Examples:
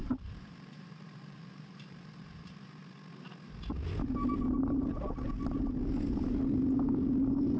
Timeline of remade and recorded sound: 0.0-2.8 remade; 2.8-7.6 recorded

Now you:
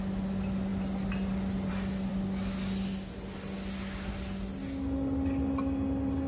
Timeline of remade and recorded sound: 0.0-6.3 recorded